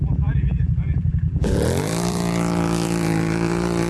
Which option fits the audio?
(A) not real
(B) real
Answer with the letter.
A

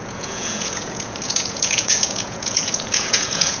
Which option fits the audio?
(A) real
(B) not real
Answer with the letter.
B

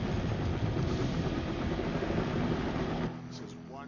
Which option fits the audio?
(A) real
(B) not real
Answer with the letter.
A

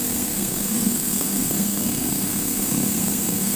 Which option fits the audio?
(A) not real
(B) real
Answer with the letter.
A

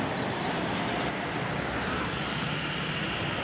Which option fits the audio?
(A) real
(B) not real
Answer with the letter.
A